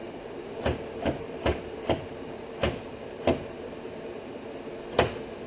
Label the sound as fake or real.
fake